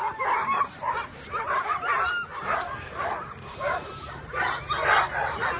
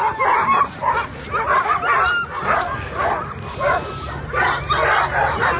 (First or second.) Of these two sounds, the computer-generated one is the first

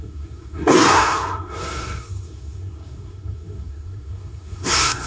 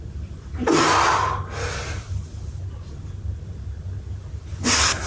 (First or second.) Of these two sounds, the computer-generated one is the first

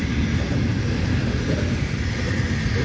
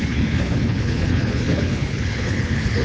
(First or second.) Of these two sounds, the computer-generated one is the second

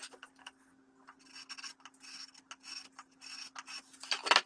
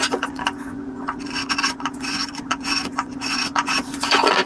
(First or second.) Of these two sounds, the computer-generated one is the second